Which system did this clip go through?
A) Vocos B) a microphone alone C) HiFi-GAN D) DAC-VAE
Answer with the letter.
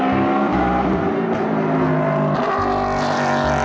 B